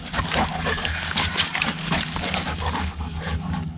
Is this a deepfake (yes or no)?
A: yes